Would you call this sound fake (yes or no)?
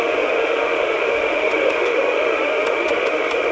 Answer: yes